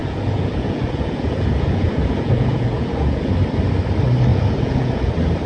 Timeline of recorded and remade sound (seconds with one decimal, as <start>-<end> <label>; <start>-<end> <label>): 0.0-3.3 remade; 3.3-4.3 recorded; 4.3-5.1 remade; 5.1-5.5 recorded